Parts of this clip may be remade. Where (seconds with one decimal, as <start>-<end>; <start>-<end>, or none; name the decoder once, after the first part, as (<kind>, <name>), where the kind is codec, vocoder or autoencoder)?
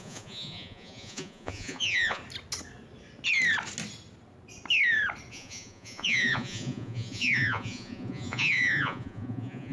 0.0-2.2 (vocoder, Vocos); 5.3-9.7